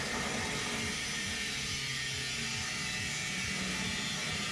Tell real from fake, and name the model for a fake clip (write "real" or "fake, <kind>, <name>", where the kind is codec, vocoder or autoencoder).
real